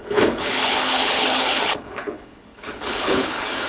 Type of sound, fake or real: fake